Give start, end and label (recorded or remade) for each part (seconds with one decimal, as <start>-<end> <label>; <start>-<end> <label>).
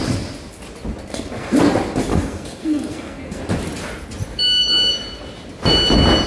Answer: 0.0-1.1 recorded; 1.1-1.6 remade; 1.6-2.1 recorded; 2.1-3.4 remade; 3.4-6.3 recorded